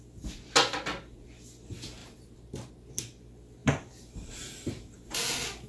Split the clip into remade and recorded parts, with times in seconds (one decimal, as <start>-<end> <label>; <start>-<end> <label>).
0.0-2.0 recorded; 2.0-2.9 remade; 2.9-3.6 recorded; 3.6-5.2 remade; 5.2-5.7 recorded